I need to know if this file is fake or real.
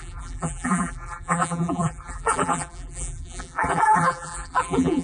fake